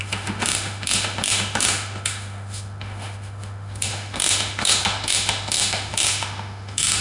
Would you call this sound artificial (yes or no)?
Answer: yes